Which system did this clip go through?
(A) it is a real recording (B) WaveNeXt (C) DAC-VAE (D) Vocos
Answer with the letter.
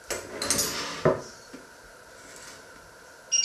A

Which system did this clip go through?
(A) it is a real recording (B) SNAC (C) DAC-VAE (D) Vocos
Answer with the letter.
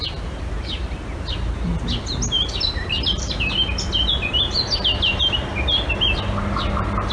A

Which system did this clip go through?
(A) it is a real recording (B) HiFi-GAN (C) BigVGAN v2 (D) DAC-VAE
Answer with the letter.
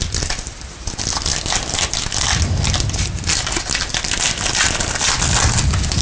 A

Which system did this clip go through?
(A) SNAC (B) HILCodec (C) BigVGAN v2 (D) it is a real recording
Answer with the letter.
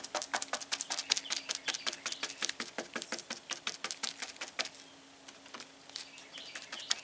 D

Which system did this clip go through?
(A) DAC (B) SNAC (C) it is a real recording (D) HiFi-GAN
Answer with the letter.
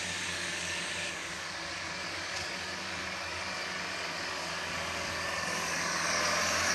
A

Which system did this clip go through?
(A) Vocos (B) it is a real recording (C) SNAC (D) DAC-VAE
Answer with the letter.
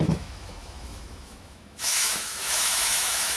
D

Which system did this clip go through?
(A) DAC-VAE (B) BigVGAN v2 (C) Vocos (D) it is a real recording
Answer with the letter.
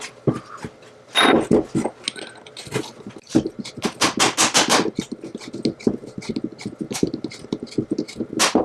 D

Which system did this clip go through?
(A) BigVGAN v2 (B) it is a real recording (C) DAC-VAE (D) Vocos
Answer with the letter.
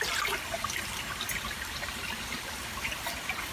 B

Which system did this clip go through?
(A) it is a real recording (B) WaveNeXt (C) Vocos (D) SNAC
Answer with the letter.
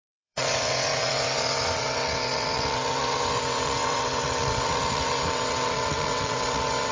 B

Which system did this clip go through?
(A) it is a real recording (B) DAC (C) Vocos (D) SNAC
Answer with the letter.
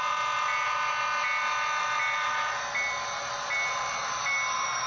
A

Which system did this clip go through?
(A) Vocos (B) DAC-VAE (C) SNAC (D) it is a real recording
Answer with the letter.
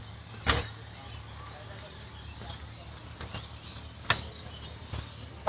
D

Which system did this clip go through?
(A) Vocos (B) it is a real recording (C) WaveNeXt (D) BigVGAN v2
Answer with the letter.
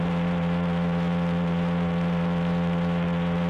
D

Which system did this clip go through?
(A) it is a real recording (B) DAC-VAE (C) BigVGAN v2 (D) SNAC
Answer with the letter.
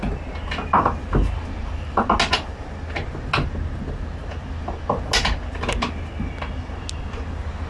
A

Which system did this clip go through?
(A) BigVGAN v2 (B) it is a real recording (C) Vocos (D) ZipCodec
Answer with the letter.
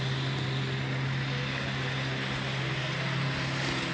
B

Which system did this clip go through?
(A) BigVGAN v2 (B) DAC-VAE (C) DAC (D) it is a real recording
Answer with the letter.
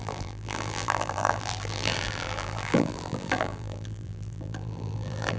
A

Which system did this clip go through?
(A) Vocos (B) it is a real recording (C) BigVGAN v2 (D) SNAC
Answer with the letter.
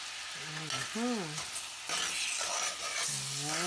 B